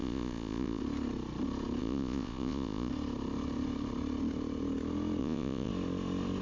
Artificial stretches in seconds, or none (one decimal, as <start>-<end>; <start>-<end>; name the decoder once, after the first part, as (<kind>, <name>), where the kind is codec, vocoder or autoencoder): 0.0-0.8 (vocoder, Vocos); 1.8-2.9; 5.2-5.7